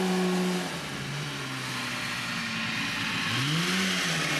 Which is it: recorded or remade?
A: recorded